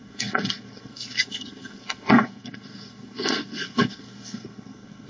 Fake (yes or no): yes